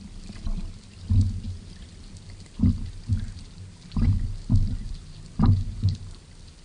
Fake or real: real